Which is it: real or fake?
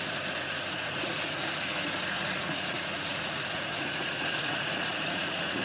fake